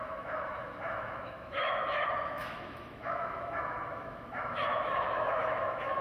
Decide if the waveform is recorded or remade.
remade